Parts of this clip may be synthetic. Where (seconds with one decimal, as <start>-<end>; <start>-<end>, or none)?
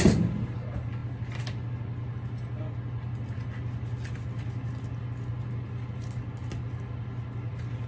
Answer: none